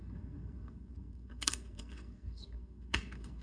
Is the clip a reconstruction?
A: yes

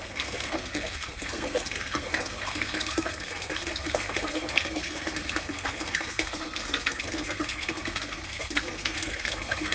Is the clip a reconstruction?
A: yes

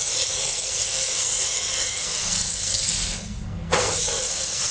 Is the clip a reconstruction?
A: yes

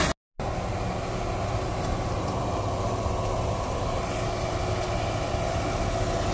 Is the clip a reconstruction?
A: no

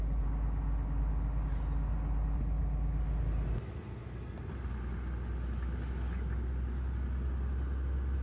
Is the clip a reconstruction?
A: no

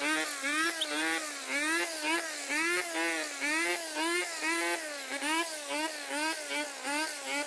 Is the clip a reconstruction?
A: no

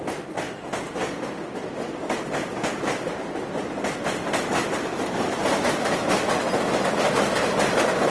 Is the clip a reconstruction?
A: no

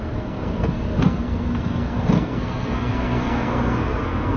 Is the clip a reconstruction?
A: yes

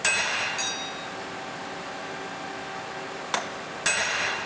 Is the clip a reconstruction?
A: no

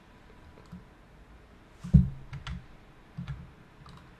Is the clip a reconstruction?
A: no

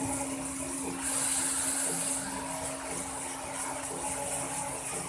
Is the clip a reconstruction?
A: no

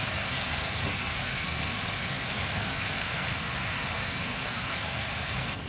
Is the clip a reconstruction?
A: yes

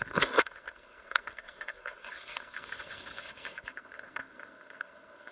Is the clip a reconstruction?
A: yes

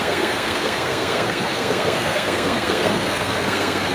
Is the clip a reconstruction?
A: yes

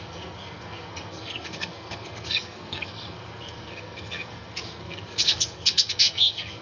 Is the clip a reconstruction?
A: yes